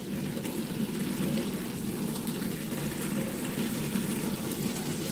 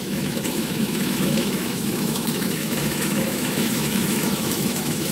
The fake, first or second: second